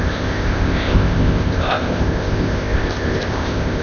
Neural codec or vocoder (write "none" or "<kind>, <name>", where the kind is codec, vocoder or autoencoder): codec, ZipCodec